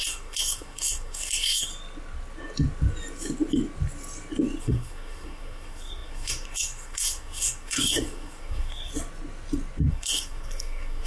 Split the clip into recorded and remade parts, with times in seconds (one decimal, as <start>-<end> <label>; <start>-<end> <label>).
0.0-1.7 remade; 1.7-4.6 recorded; 4.6-8.9 remade; 8.9-9.9 recorded; 9.9-11.1 remade